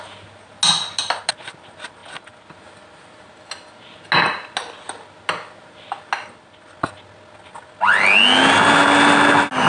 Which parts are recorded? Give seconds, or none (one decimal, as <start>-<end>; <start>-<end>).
0.0-9.7